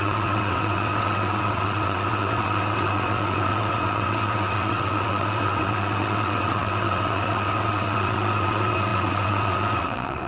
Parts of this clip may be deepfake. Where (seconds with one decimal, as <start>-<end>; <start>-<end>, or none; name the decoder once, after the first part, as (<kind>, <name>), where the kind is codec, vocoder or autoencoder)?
0.0-10.3 (vocoder, WaveNeXt)

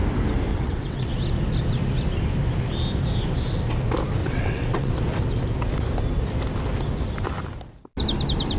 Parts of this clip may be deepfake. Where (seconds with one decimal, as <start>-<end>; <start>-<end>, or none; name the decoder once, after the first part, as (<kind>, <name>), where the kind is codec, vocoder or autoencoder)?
0.5-1.1 (vocoder, WaveNeXt); 4.2-4.9

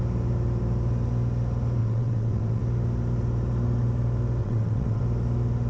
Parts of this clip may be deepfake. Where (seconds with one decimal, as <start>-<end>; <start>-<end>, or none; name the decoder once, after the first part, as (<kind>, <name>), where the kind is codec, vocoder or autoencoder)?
1.8-2.6 (vocoder, WaveNeXt); 4.4-5.0

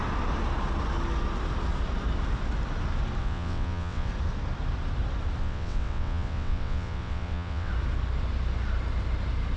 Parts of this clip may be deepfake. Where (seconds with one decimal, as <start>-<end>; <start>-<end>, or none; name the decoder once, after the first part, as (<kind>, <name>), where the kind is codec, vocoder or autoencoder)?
3.2-4.1 (vocoder, WaveNeXt); 5.4-7.7

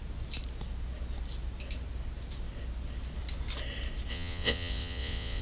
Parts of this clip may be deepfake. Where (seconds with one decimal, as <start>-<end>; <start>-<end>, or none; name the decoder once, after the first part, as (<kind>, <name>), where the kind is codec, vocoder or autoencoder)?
4.1-5.4 (vocoder, WaveNeXt)

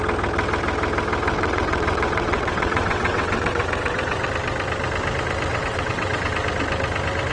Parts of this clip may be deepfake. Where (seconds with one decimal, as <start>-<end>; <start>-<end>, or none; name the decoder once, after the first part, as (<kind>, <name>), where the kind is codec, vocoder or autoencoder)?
1.3-4.3 (vocoder, WaveNeXt); 5.5-6.3

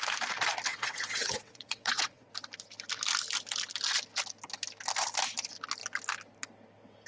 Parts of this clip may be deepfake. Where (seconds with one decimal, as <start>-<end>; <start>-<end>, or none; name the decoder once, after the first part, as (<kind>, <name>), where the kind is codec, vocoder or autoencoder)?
0.7-2.3 (vocoder, WaveNeXt)

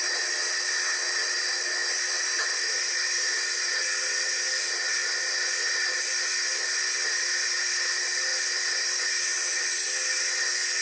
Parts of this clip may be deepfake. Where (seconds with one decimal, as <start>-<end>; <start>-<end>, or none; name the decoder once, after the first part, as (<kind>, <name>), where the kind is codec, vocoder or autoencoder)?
none